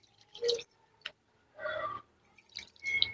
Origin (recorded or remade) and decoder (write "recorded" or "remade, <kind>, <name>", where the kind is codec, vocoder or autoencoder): recorded